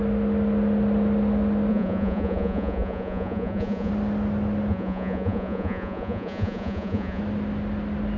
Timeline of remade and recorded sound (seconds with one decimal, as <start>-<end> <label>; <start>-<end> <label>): 0.0-1.7 recorded; 1.7-3.9 remade; 3.9-4.7 recorded; 4.7-7.2 remade; 7.2-8.2 recorded